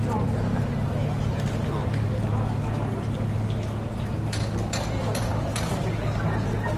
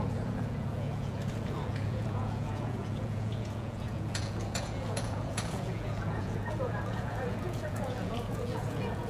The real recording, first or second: first